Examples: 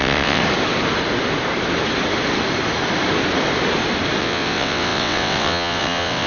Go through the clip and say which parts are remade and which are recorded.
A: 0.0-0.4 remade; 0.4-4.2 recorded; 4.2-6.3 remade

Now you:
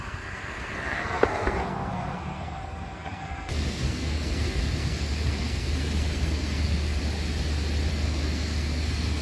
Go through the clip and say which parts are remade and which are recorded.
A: 0.0-7.0 remade; 7.0-7.9 recorded; 7.9-9.2 remade

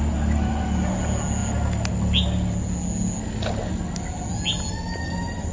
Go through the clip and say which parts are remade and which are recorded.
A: 0.0-5.5 recorded

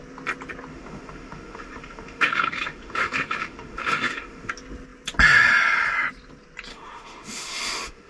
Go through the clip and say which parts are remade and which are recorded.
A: 0.0-0.7 recorded; 0.7-4.5 remade; 4.5-6.7 recorded; 6.7-8.1 remade

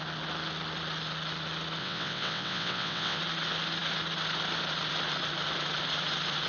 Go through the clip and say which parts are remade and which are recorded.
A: 0.0-1.8 recorded; 1.8-3.2 remade; 3.2-6.5 recorded

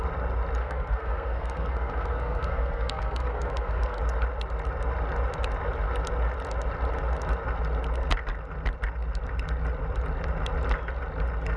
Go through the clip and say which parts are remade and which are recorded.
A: 0.0-0.6 recorded; 0.6-4.0 remade; 4.0-11.6 recorded